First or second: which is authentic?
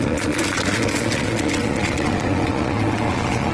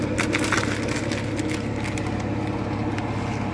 second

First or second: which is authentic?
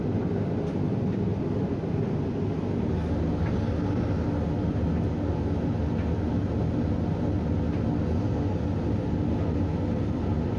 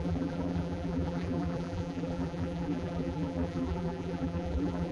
first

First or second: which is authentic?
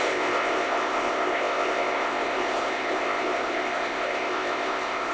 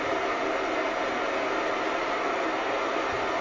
second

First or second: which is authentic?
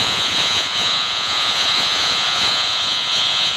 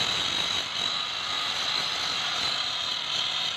second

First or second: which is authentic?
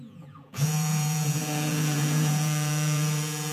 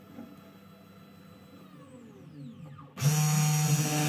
second